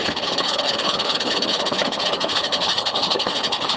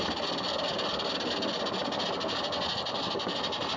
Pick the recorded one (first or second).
second